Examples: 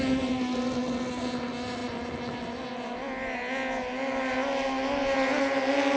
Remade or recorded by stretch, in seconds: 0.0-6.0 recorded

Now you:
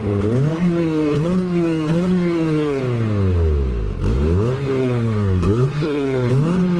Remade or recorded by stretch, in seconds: 0.0-0.5 recorded; 0.5-2.8 remade; 2.8-4.8 recorded; 4.8-6.3 remade; 6.3-6.8 recorded